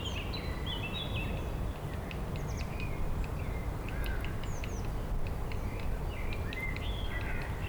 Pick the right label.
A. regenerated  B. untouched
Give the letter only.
B